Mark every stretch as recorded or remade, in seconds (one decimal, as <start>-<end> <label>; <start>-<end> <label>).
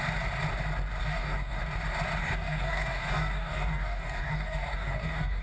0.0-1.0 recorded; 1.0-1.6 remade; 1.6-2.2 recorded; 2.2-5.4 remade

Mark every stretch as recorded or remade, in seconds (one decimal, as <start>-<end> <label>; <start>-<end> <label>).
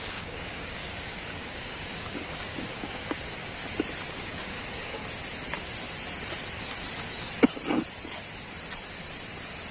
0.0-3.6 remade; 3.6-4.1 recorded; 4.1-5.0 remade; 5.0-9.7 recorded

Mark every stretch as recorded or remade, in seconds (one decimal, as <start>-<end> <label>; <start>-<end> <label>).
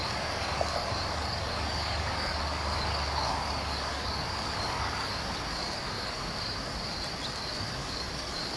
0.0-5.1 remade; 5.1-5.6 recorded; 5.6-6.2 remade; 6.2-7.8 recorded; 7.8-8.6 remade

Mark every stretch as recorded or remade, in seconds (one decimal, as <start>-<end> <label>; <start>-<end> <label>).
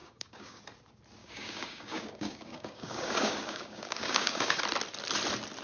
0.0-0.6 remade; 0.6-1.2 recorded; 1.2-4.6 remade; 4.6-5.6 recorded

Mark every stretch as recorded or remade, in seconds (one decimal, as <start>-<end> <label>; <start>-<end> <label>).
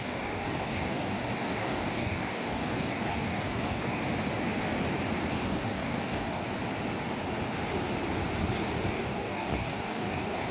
0.0-4.0 remade; 4.0-5.3 recorded; 5.3-6.4 remade; 6.4-8.9 recorded; 8.9-10.5 remade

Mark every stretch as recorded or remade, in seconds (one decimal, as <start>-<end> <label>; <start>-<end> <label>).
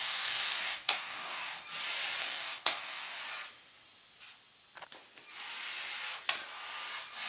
0.0-1.6 remade; 1.6-2.2 recorded; 2.2-3.2 remade; 3.2-7.3 recorded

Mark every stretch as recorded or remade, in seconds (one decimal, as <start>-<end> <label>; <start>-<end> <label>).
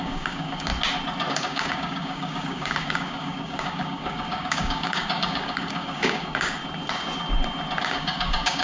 0.0-0.7 remade; 0.7-1.3 recorded; 1.3-6.6 remade; 6.6-7.8 recorded; 7.8-8.6 remade